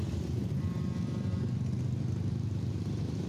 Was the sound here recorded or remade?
recorded